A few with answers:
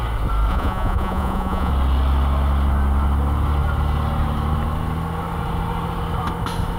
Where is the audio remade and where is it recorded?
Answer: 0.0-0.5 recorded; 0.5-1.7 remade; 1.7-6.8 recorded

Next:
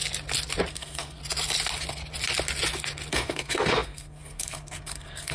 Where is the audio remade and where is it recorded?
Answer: 0.0-0.7 recorded; 0.7-1.2 remade; 1.2-3.1 recorded; 3.1-5.3 remade

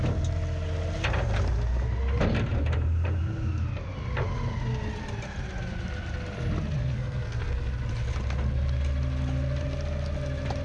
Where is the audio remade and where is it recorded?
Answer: 0.0-6.8 recorded; 6.8-7.7 remade; 7.7-10.6 recorded

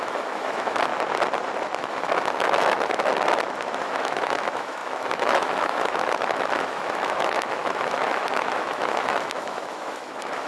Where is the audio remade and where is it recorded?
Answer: 0.0-0.9 remade; 0.9-1.8 recorded; 1.8-3.1 remade; 3.1-3.8 recorded; 3.8-10.5 remade

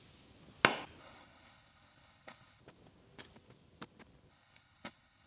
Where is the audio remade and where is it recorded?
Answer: 0.0-1.0 recorded; 1.0-2.6 remade; 2.6-4.3 recorded; 4.3-5.3 remade

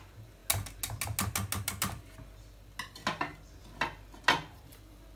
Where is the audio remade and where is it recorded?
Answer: 0.0-5.2 recorded

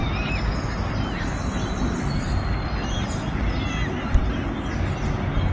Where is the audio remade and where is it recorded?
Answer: 0.0-5.5 recorded